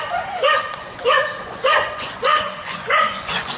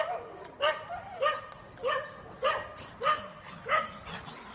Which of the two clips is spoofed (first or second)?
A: first